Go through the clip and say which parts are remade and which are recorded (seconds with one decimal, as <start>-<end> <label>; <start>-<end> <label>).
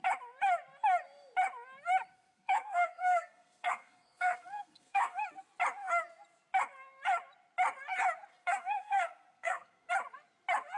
0.0-2.1 recorded; 2.1-5.2 remade; 5.2-8.3 recorded; 8.3-9.9 remade; 9.9-10.8 recorded